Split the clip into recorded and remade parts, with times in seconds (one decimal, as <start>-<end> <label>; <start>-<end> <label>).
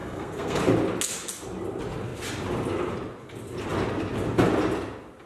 0.0-0.6 remade; 0.6-5.3 recorded